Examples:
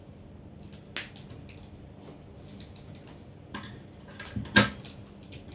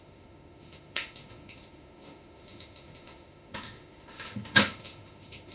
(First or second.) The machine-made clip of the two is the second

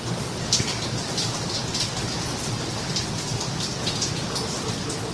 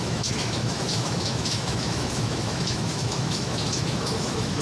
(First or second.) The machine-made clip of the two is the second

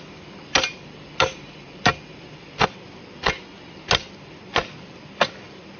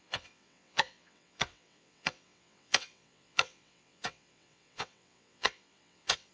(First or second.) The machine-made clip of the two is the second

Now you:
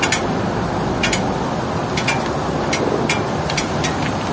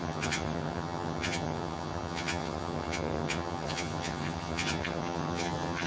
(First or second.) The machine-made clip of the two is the second